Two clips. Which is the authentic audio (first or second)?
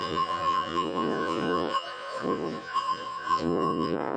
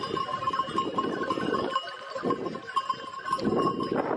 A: second